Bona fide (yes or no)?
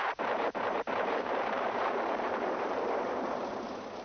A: no